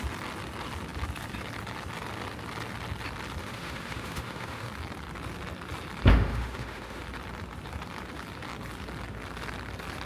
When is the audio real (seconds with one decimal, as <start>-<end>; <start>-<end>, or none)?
0.0-3.4; 4.7-6.1; 7.0-10.1